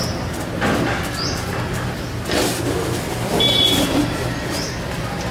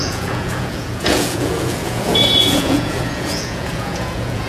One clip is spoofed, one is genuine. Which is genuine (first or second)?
first